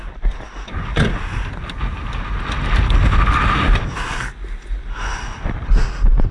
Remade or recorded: recorded